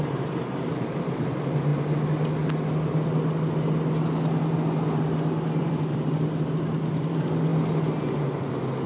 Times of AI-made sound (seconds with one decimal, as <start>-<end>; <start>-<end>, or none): 0.0-1.7; 5.6-7.5; 8.2-8.9